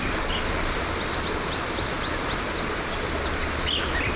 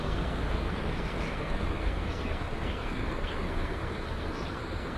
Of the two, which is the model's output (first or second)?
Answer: second